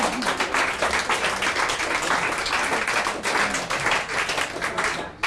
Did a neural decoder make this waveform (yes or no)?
no